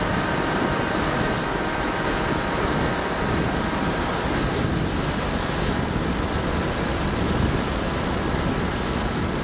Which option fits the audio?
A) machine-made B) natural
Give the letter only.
B